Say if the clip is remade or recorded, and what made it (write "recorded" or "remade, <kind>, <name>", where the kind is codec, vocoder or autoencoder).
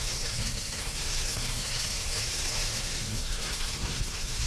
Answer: remade, codec, SNAC